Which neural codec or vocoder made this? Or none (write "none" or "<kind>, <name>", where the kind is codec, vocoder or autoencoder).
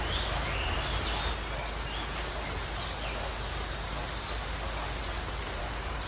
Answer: none